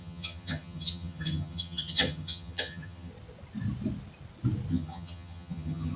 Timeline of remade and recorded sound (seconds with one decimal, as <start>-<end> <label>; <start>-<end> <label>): 0.0-3.1 remade; 3.1-4.7 recorded; 4.7-6.0 remade